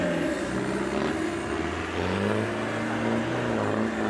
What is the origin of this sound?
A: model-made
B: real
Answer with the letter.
B